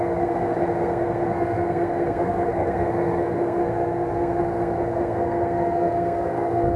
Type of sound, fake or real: fake